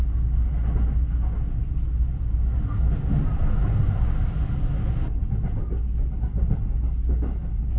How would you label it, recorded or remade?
recorded